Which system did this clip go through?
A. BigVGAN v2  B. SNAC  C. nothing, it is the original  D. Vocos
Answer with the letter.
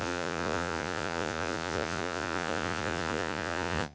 D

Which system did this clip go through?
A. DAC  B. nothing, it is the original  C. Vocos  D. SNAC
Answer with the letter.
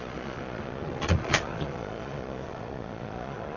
C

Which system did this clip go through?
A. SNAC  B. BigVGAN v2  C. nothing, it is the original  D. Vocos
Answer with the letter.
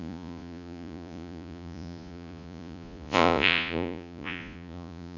D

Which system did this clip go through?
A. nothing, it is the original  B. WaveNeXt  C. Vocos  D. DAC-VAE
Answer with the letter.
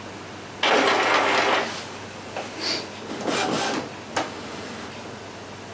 A